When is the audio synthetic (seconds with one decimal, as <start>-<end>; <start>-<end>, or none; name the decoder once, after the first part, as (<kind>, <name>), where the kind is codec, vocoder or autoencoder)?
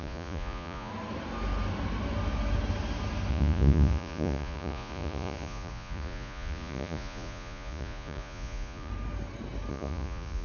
0.0-0.9 (vocoder, Vocos); 3.3-8.9; 9.7-10.4